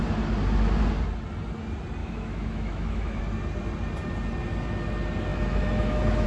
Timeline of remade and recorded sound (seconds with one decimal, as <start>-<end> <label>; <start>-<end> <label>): 0.0-2.0 recorded; 2.0-3.2 remade; 3.2-5.3 recorded; 5.3-6.3 remade